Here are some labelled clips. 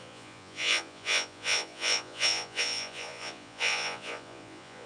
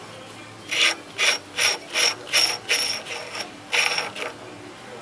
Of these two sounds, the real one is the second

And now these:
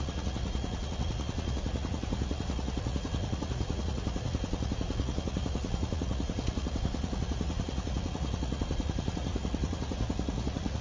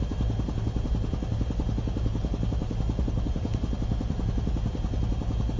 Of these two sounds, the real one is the second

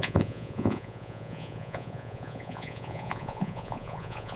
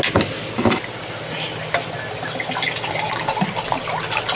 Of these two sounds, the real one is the second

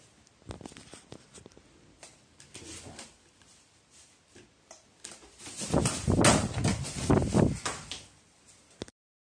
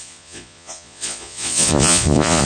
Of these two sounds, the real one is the first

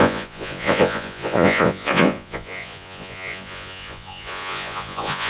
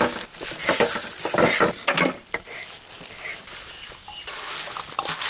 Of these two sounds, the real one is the second